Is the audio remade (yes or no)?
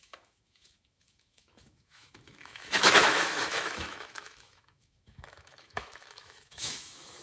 yes